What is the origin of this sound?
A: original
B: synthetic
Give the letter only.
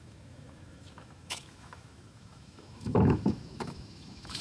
B